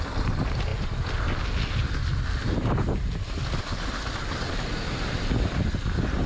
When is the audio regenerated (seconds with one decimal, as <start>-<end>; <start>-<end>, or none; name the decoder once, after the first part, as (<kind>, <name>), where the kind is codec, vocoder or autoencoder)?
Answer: none